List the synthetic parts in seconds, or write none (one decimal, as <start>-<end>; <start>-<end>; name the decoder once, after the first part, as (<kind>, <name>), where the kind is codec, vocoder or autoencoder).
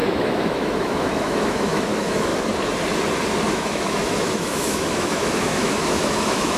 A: 0.0-2.3 (autoencoder, DAC-VAE); 3.5-6.6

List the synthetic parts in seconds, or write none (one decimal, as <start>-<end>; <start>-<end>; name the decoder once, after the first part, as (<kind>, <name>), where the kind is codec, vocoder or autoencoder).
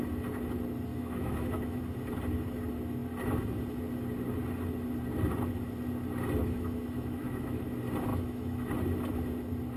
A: 0.9-1.8 (autoencoder, DAC-VAE); 6.4-7.6; 8.1-8.7